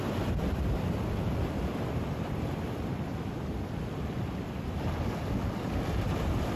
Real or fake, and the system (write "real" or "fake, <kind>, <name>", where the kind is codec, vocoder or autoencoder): fake, vocoder, BigVGAN v2